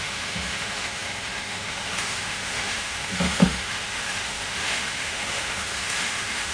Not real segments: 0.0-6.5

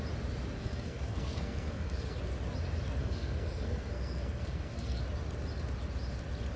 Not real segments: 0.6-2.2; 3.0-5.0

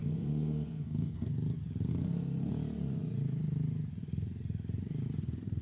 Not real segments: 0.0-1.3; 1.9-2.5

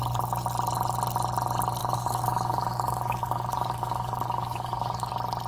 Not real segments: 1.8-5.1

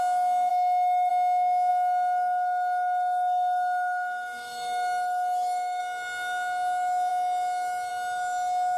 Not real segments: 0.5-1.1; 1.7-5.8